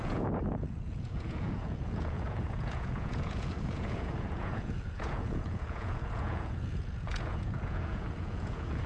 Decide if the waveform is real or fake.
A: fake